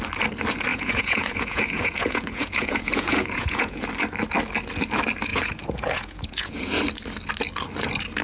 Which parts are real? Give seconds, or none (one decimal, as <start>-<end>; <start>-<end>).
0.0-0.7; 3.9-5.3; 6.7-8.2